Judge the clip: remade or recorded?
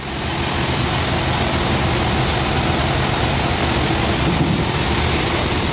recorded